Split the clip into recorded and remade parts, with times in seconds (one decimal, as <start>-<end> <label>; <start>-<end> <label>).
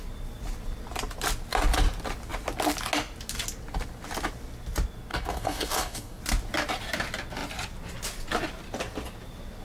0.0-5.1 recorded; 5.1-6.2 remade; 6.2-9.6 recorded